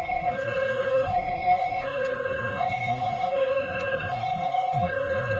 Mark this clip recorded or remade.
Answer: remade